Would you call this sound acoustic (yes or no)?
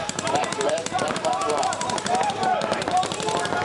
no